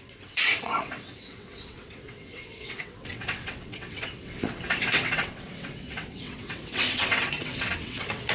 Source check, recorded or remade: remade